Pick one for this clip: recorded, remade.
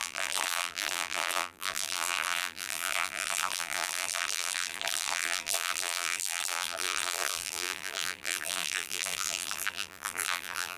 remade